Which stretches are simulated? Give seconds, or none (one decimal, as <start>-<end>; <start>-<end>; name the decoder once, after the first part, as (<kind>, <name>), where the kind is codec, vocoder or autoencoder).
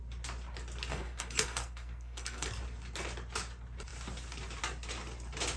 0.9-2.5 (codec, SNAC)